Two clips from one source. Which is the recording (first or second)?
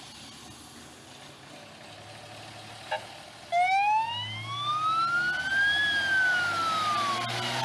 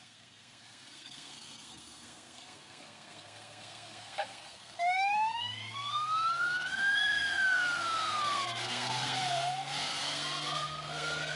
first